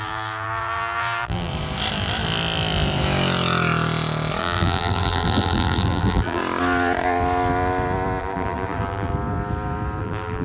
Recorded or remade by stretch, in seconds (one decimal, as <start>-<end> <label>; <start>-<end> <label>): 0.0-1.5 remade; 1.5-4.4 recorded; 4.4-6.4 remade; 6.4-8.2 recorded; 8.2-9.1 remade; 9.1-10.0 recorded; 10.0-10.4 remade